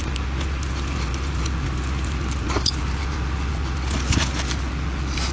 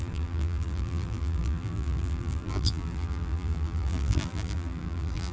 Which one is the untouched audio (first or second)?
first